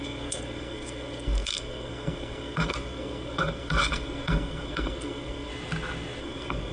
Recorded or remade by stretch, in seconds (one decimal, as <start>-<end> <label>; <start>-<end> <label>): 0.0-5.5 remade; 5.5-6.2 recorded; 6.2-6.7 remade